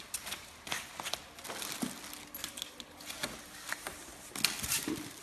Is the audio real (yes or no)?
yes